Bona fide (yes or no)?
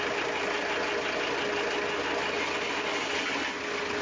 yes